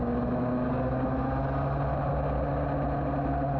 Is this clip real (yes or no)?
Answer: yes